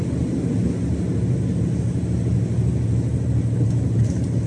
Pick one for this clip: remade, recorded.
recorded